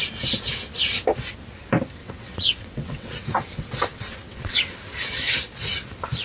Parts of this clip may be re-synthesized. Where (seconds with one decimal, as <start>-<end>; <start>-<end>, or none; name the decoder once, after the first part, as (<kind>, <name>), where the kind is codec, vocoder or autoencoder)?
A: 2.0-4.7 (vocoder, WaveNeXt)